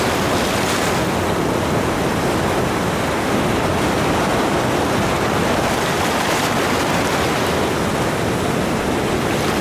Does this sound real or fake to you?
real